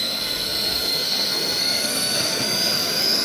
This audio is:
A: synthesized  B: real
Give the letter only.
A